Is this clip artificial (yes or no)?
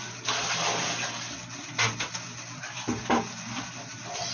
no